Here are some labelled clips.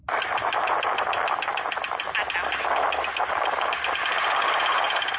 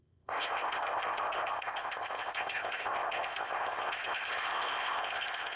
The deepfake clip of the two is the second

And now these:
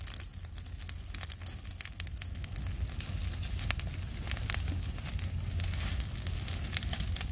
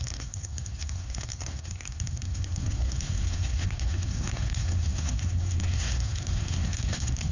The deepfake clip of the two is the second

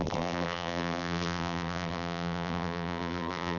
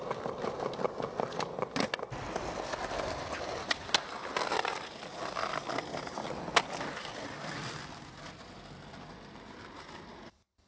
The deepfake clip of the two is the first